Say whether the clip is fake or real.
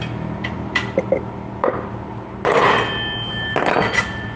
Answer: real